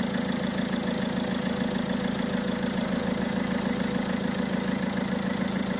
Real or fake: real